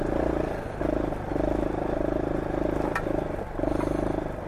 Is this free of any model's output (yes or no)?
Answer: yes